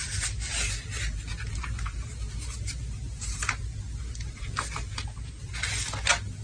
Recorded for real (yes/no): yes